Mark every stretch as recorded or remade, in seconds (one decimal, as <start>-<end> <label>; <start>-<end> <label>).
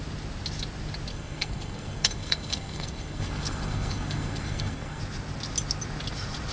0.0-1.1 recorded; 1.1-5.0 remade; 5.0-6.5 recorded